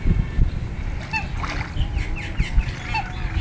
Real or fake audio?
real